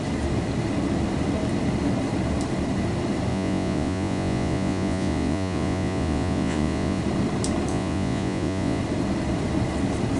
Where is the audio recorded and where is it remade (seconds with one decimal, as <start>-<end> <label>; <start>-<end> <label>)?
0.0-3.3 recorded; 3.3-7.0 remade; 7.0-7.7 recorded; 7.7-8.8 remade; 8.8-10.2 recorded

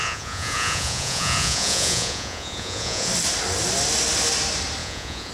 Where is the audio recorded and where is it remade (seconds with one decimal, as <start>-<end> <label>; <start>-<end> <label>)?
0.0-3.1 remade; 3.1-4.8 recorded; 4.8-5.3 remade

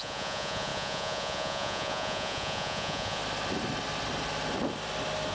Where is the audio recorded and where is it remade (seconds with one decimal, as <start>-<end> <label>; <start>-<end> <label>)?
0.0-3.2 remade; 3.2-5.3 recorded

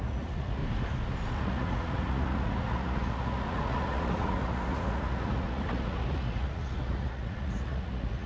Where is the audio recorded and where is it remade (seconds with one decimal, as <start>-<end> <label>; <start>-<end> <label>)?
0.0-0.6 remade; 0.6-1.4 recorded; 1.4-8.3 remade

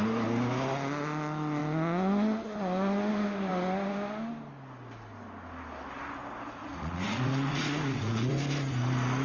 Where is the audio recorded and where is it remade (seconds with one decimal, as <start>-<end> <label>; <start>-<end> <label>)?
0.0-6.6 recorded; 6.6-8.3 remade; 8.3-9.2 recorded

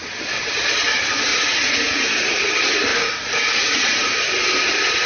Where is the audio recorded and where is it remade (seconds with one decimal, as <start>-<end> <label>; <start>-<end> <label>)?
0.0-1.3 recorded; 1.3-2.5 remade; 2.5-2.9 recorded; 2.9-4.1 remade; 4.1-5.1 recorded